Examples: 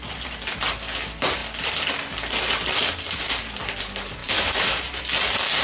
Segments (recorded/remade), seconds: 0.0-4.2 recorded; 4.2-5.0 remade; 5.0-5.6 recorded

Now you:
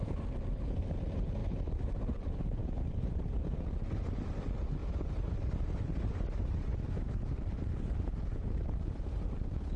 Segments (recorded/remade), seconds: 0.0-1.4 recorded; 1.4-3.4 remade; 3.4-4.8 recorded; 4.8-9.4 remade; 9.4-9.8 recorded

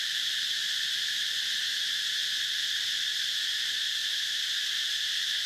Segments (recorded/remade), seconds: 0.0-0.6 remade; 0.6-1.7 recorded; 1.7-2.2 remade; 2.2-3.5 recorded; 3.5-5.5 remade

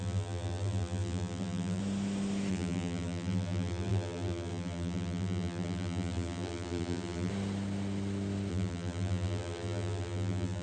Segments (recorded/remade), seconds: 0.0-1.8 remade; 1.8-2.5 recorded; 2.5-7.3 remade; 7.3-8.5 recorded; 8.5-10.6 remade